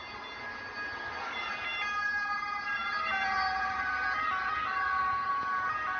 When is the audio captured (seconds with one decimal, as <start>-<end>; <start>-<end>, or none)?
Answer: 0.0-1.2